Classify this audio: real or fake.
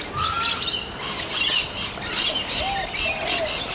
real